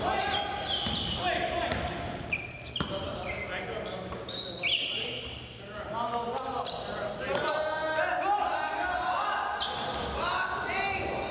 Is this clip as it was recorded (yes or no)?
yes